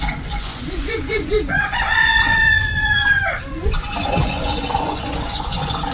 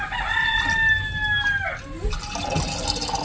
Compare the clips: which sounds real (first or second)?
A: second